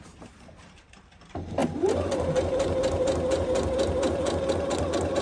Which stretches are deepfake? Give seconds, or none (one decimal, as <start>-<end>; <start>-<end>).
0.0-5.2